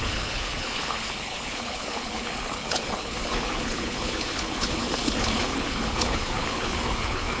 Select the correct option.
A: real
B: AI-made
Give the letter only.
B